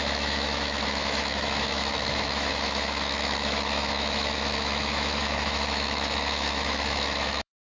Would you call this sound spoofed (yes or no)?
yes